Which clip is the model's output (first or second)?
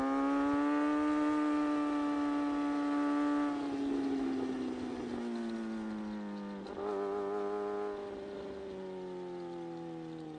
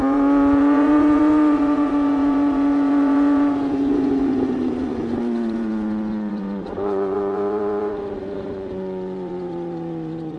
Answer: second